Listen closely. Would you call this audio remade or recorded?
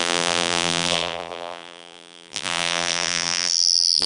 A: remade